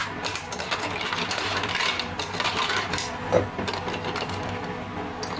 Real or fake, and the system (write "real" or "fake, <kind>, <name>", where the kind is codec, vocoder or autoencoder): real